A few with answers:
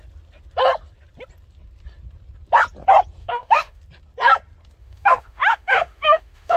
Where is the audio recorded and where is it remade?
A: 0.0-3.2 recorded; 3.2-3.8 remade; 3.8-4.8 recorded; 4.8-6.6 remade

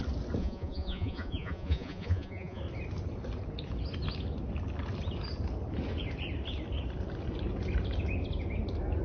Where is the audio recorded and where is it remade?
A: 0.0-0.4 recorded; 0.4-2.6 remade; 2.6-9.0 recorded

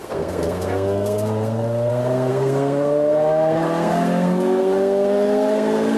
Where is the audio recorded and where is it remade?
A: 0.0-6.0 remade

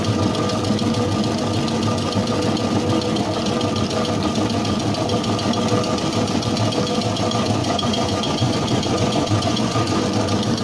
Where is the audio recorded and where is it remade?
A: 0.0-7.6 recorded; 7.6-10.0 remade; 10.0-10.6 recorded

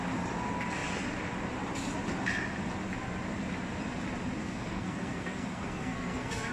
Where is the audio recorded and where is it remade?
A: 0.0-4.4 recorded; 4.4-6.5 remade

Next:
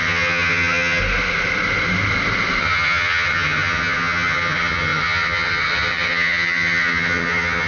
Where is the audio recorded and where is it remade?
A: 0.0-1.0 remade; 1.0-2.6 recorded; 2.6-7.7 remade

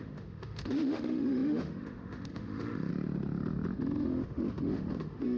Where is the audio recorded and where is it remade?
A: 0.0-2.9 remade; 2.9-4.0 recorded; 4.0-5.4 remade